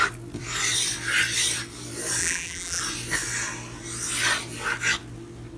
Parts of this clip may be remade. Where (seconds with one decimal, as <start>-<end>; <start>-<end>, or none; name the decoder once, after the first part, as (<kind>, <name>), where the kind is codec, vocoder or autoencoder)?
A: 2.2-2.8 (vocoder, BigVGAN v2)